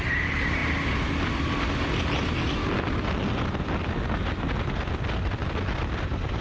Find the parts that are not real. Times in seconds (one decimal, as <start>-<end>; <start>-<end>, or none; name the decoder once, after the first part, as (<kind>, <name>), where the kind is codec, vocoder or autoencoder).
none